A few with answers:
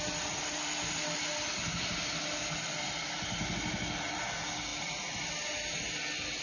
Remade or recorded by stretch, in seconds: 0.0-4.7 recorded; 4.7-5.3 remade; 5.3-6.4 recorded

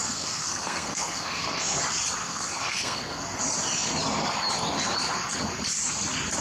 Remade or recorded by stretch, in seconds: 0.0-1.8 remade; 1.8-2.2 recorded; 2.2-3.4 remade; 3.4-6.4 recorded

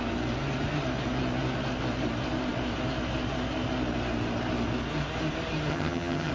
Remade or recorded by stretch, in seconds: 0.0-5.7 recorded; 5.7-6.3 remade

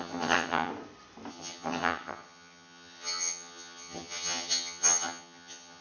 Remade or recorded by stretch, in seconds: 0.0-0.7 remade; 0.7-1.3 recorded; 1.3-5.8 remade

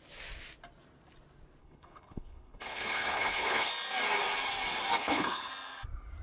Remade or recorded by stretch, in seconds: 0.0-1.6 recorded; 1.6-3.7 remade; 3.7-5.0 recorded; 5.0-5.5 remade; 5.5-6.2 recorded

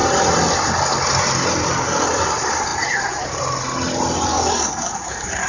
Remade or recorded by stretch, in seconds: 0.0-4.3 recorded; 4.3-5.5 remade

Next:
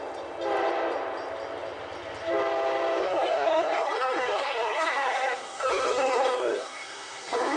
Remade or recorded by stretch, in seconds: 0.0-3.0 recorded; 3.0-7.6 remade